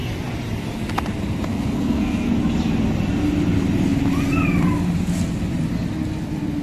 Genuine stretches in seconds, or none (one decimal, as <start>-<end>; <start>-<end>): 0.0-1.5; 2.3-6.6